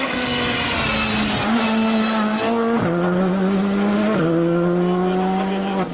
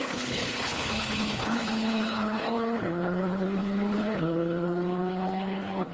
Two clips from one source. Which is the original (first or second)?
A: first